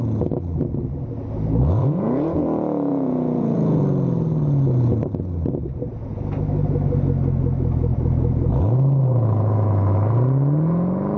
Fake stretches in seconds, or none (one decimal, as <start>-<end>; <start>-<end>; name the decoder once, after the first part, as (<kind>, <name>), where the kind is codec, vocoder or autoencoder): 1.8-2.4 (vocoder, Vocos); 2.9-3.8; 7.9-8.6